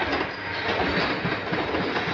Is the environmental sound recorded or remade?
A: recorded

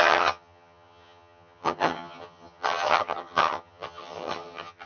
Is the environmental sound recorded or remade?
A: remade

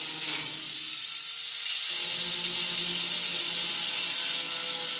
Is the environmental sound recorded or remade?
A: recorded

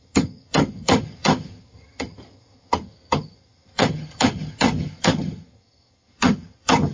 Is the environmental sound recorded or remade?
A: remade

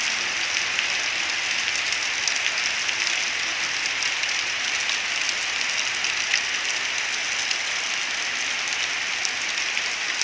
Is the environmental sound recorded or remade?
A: recorded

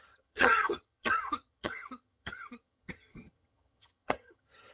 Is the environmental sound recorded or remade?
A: remade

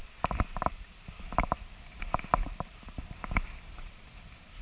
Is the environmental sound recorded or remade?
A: recorded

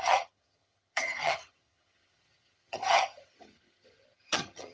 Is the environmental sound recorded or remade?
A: remade